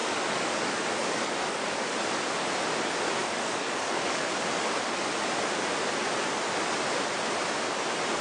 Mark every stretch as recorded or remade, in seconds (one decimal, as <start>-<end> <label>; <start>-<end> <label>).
0.0-1.7 remade; 1.7-3.2 recorded; 3.2-4.3 remade; 4.3-8.2 recorded